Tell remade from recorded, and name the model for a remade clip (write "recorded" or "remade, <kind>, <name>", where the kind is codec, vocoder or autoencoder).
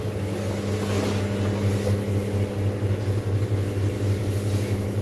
recorded